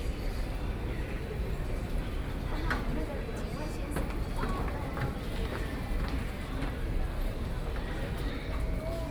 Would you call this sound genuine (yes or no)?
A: yes